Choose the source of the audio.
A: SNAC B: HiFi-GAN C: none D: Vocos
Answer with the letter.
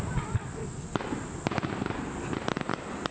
C